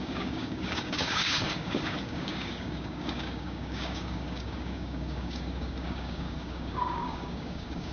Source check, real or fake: fake